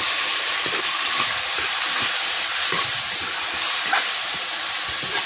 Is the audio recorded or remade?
recorded